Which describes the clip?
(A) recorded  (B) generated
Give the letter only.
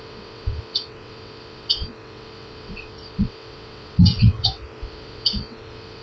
B